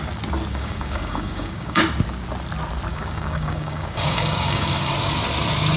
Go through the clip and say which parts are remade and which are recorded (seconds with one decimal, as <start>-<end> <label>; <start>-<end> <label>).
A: 0.0-0.5 recorded; 0.5-1.8 remade; 1.8-2.9 recorded; 2.9-4.9 remade; 4.9-5.8 recorded